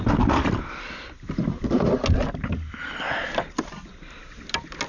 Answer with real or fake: real